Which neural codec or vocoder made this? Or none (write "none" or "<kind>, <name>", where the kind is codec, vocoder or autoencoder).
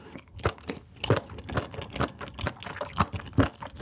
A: none